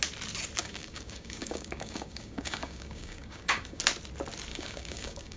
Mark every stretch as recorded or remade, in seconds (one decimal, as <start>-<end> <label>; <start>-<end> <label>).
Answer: 0.0-0.6 recorded; 0.6-3.8 remade; 3.8-4.5 recorded; 4.5-5.4 remade